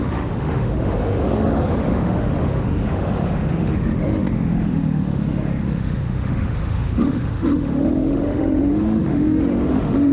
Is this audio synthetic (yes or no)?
yes